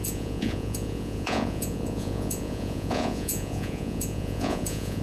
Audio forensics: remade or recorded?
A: remade